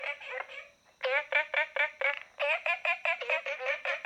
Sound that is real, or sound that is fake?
real